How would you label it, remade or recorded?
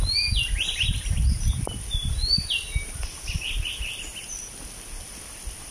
recorded